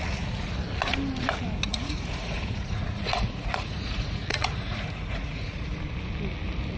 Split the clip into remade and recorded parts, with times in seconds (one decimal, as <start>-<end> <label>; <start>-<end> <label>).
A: 0.0-1.7 recorded; 1.7-5.8 remade; 5.8-6.8 recorded